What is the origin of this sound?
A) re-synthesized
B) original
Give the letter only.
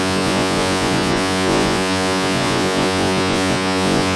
A